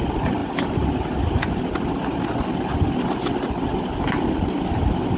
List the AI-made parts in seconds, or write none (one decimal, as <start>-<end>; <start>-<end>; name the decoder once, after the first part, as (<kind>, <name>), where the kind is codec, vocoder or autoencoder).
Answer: none